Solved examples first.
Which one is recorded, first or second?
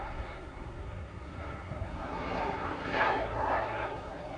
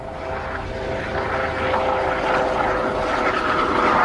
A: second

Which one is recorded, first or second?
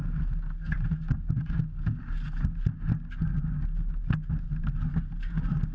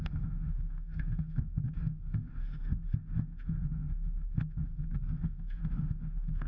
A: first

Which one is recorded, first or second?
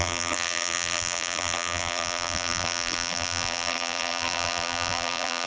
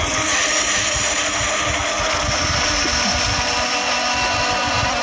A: second